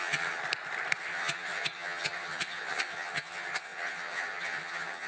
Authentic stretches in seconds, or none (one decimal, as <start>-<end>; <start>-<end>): 0.4-1.0